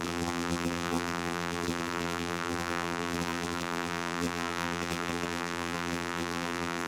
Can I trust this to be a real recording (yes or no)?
no